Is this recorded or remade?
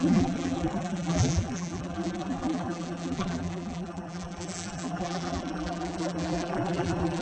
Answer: remade